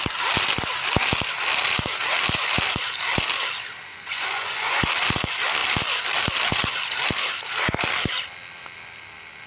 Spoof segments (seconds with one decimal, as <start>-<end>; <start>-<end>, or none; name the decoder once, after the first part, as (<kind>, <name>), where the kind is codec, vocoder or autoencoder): 3.9-4.9 (vocoder, Vocos)